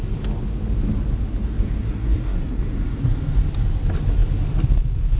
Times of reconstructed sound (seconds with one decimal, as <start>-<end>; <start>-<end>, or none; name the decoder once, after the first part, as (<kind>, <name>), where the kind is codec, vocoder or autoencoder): 1.8-2.6 (codec, SNAC)